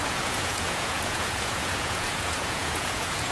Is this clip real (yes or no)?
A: no